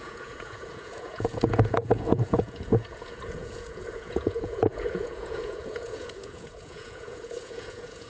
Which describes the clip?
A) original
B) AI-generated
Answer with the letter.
B